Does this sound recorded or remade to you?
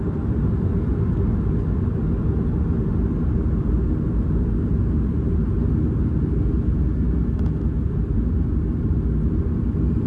recorded